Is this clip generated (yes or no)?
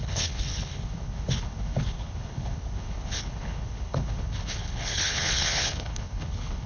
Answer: yes